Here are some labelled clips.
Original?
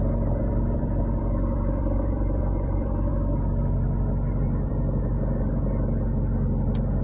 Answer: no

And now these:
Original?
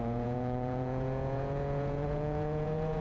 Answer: no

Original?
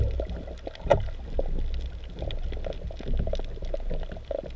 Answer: yes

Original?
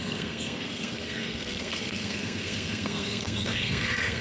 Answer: no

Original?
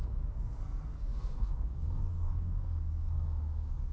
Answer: no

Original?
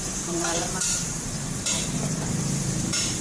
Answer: no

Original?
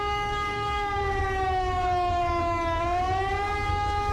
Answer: no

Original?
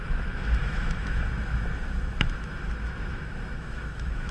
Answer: no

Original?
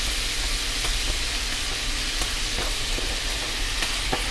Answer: yes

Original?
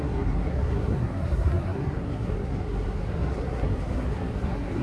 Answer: no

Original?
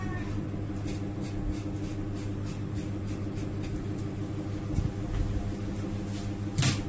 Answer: yes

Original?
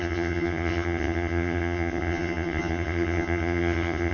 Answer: no